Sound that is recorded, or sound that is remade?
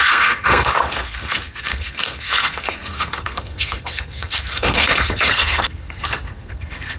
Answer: remade